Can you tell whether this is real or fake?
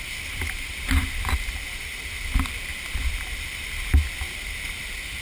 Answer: fake